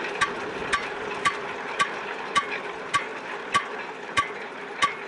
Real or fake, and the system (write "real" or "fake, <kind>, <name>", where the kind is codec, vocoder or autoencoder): real